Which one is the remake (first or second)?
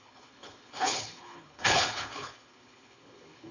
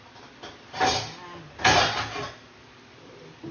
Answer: first